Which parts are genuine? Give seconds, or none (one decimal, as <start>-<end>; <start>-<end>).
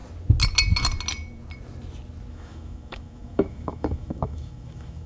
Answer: 0.0-2.3